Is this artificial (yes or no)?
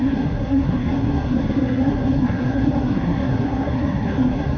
yes